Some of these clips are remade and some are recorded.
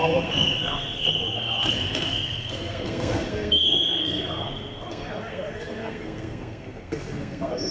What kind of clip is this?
remade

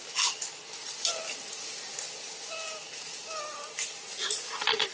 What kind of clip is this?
recorded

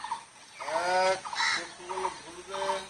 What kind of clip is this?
recorded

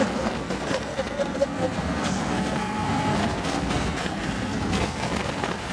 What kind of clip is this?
remade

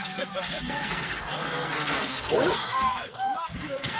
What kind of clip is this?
remade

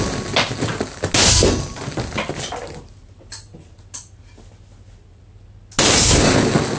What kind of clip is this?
recorded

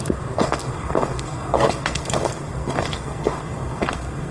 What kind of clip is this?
remade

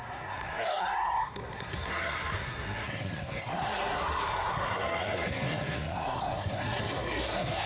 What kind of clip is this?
remade